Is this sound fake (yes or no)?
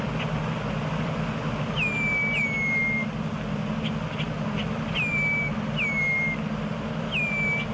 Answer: no